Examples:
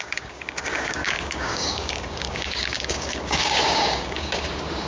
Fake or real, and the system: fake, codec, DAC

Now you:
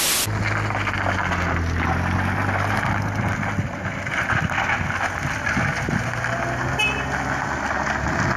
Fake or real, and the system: real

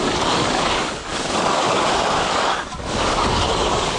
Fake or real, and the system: fake, codec, DAC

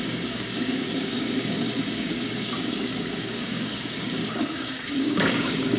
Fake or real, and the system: fake, codec, DAC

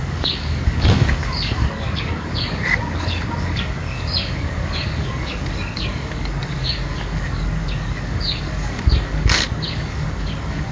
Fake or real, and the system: fake, codec, DAC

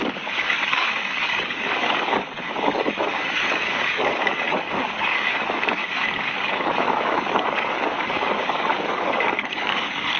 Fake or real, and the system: fake, codec, DAC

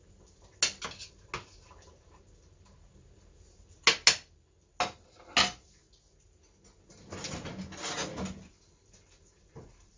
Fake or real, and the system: real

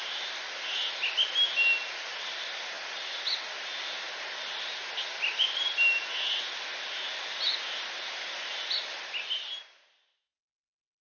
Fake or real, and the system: real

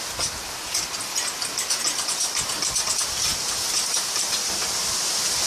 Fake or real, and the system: real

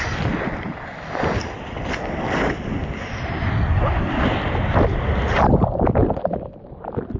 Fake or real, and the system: real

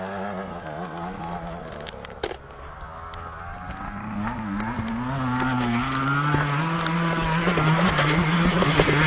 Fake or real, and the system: real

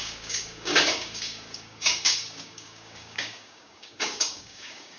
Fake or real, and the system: fake, codec, DAC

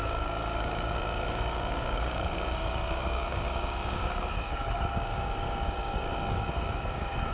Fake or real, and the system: fake, codec, DAC